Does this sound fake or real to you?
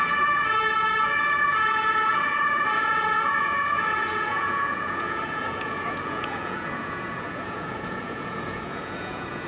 fake